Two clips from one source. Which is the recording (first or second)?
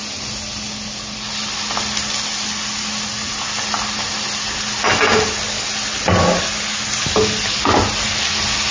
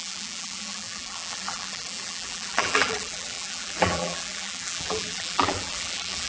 first